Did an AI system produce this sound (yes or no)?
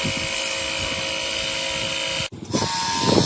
no